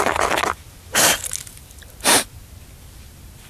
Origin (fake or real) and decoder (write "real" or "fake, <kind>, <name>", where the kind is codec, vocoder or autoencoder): real